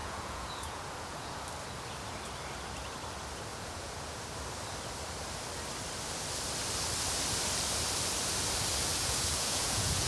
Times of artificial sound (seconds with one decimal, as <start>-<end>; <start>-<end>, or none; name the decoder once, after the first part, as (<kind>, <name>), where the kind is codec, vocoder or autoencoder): 0.0-1.4 (vocoder, Vocos); 3.5-4.2; 8.9-10.1